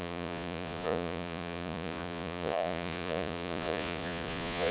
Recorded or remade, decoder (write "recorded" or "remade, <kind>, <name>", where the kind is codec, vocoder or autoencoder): remade, vocoder, Vocos